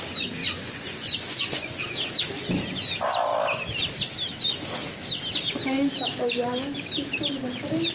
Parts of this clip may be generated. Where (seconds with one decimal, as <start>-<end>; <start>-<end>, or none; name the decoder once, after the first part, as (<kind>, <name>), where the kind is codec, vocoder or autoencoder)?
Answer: 0.4-1.8 (vocoder, Vocos)